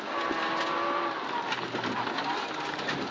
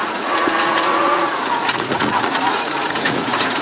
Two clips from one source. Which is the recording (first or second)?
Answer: first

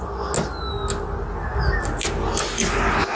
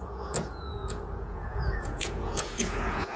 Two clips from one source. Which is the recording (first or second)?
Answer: first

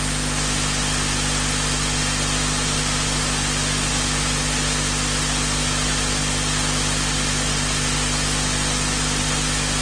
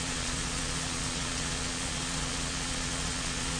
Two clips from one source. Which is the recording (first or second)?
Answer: first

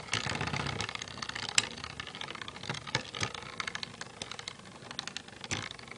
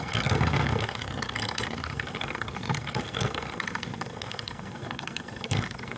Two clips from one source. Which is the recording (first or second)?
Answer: first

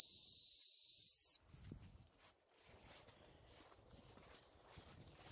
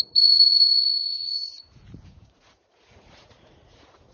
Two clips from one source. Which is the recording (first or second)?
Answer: first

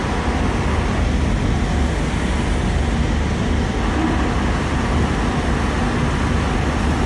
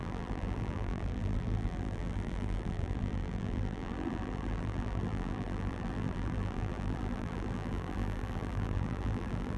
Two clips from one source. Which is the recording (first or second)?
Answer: first